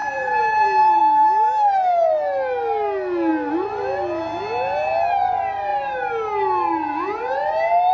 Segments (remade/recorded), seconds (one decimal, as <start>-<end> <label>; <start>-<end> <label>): 0.0-1.0 remade; 1.0-7.9 recorded